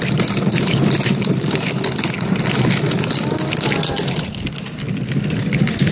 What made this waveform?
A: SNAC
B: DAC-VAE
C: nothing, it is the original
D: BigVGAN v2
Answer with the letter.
C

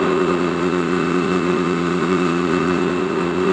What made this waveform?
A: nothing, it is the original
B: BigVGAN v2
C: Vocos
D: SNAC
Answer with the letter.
C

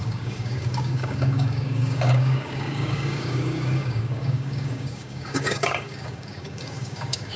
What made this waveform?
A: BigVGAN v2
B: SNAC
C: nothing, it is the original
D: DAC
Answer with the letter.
D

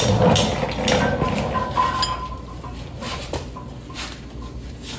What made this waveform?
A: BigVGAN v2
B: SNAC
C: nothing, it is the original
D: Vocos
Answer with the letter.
C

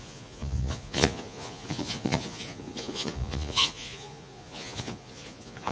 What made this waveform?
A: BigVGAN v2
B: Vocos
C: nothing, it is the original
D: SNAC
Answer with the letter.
B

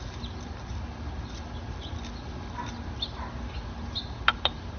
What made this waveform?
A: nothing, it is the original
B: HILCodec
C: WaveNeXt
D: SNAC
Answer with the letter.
A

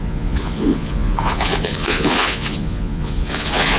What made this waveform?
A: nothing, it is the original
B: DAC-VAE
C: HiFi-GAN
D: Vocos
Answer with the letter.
D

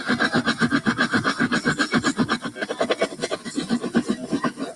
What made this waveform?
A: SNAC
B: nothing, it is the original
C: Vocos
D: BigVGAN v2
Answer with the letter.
B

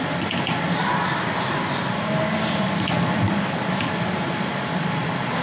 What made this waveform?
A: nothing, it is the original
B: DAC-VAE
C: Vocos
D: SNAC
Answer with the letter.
A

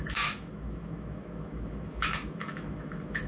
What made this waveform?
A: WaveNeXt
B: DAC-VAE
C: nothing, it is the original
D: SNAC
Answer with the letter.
B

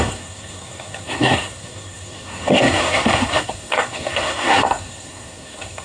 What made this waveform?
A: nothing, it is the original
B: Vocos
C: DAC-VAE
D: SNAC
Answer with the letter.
D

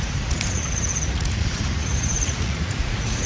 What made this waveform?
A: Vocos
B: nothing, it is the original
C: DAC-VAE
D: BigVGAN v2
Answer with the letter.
A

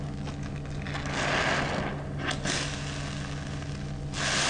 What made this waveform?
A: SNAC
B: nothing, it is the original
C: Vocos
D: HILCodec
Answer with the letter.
B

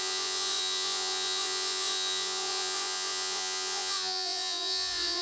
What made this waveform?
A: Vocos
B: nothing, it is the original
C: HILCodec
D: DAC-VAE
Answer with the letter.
A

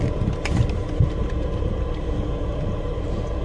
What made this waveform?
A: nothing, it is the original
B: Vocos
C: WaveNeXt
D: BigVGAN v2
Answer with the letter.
A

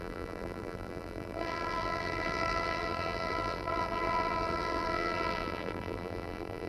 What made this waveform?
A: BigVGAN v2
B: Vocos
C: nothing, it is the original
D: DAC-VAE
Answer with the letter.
A